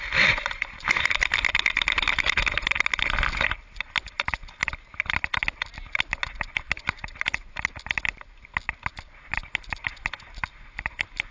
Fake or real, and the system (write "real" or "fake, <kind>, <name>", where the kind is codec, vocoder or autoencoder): real